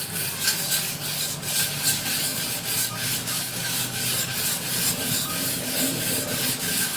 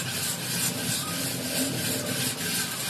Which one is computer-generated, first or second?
first